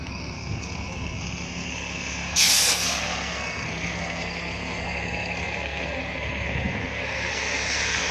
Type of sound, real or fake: fake